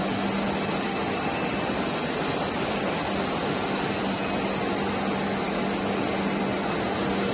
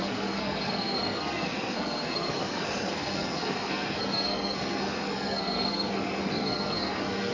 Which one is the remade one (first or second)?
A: second